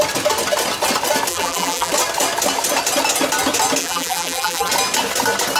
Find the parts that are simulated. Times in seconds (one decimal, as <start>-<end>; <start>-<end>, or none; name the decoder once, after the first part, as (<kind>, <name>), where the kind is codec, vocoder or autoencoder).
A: 1.3-1.9 (vocoder, BigVGAN v2); 3.8-4.7

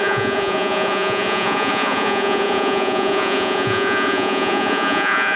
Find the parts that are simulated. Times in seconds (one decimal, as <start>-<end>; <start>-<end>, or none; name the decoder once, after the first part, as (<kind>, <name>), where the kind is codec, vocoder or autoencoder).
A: 0.0-5.4 (vocoder, Vocos)

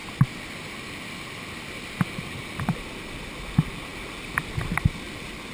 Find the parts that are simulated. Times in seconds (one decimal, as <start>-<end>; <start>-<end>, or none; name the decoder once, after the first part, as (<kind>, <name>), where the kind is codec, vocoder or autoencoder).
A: 0.6-3.9 (vocoder, BigVGAN v2); 4.5-5.5

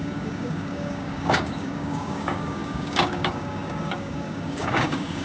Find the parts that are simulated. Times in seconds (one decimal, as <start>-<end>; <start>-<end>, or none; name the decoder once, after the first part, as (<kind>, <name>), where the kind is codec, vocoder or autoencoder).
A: 0.0-5.2 (codec, DAC)

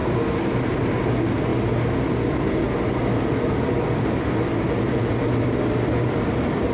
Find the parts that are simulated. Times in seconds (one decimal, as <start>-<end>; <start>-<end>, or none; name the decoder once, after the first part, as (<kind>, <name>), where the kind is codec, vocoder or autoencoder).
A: none

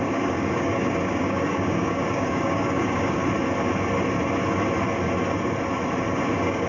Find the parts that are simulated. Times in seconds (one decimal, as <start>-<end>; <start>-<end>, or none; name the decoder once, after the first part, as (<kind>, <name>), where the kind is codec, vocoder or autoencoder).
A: 0.0-3.2 (codec, DAC); 6.3-6.7